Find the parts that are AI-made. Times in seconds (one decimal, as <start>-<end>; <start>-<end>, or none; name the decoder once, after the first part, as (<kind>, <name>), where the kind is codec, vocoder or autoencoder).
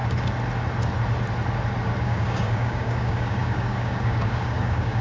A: 2.0-5.0 (codec, DAC)